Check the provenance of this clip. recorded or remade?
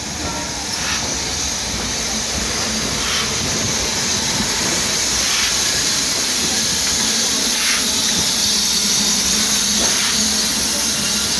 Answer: recorded